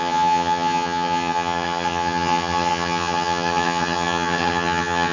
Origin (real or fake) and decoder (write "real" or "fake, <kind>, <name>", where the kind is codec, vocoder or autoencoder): fake, vocoder, HiFi-GAN